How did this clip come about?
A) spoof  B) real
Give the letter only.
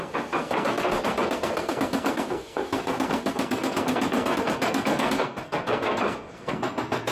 A